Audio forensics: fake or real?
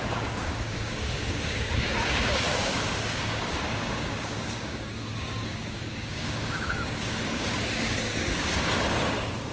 fake